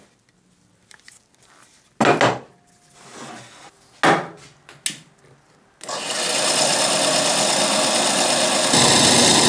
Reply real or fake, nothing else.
real